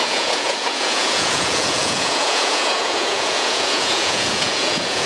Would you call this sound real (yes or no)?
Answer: no